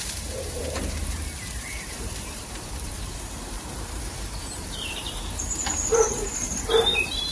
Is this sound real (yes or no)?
no